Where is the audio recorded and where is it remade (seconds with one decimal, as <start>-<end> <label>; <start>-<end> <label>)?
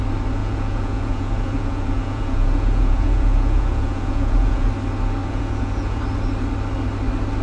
0.0-0.4 recorded; 0.4-4.7 remade; 4.7-5.2 recorded; 5.2-6.0 remade; 6.0-7.4 recorded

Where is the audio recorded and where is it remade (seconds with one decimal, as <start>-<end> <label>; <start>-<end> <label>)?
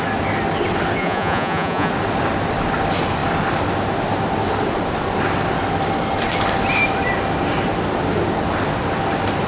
0.0-1.0 recorded; 1.0-1.9 remade; 1.9-9.5 recorded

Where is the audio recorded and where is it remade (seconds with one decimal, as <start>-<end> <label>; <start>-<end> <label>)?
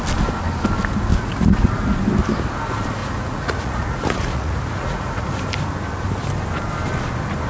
0.0-1.1 recorded; 1.1-1.9 remade; 1.9-3.0 recorded; 3.0-5.4 remade; 5.4-7.5 recorded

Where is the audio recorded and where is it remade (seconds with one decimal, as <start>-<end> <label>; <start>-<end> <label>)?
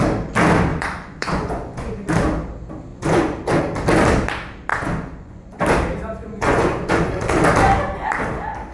0.0-0.7 recorded; 0.7-2.0 remade; 2.0-2.9 recorded; 2.9-3.6 remade; 3.6-4.7 recorded; 4.7-5.6 remade; 5.6-6.2 recorded; 6.2-7.2 remade; 7.2-8.7 recorded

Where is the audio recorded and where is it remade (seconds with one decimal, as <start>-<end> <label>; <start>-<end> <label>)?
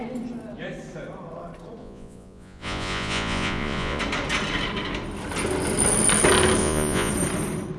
0.0-1.8 recorded; 1.8-4.0 remade; 4.0-6.6 recorded; 6.6-7.1 remade; 7.1-7.8 recorded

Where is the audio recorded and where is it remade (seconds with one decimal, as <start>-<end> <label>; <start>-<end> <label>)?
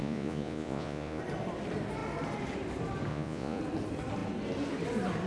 0.0-1.2 remade; 1.2-3.1 recorded; 3.1-3.6 remade; 3.6-5.3 recorded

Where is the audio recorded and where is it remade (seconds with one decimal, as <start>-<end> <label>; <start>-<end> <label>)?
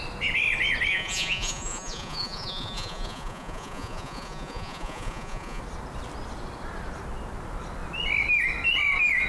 0.0-0.9 recorded; 0.9-5.6 remade; 5.6-9.3 recorded